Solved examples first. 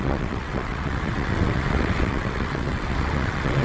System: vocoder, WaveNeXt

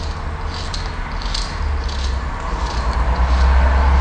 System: none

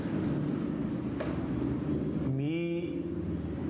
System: none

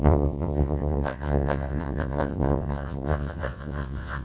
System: vocoder, WaveNeXt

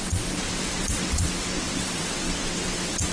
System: vocoder, WaveNeXt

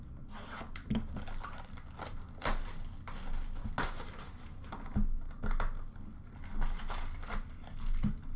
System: none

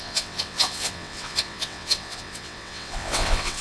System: vocoder, WaveNeXt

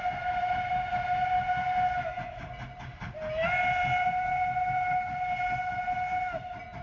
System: none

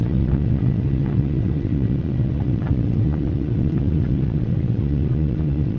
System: vocoder, WaveNeXt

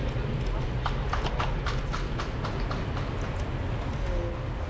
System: none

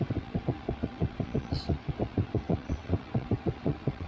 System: vocoder, WaveNeXt